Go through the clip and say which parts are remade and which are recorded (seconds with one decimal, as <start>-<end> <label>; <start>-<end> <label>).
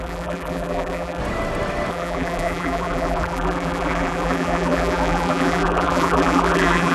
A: 0.0-1.2 remade; 1.2-1.9 recorded; 1.9-6.9 remade